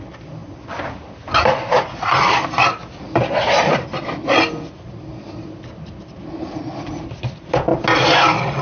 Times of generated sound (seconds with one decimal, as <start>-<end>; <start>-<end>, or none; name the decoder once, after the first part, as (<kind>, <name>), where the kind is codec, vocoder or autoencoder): none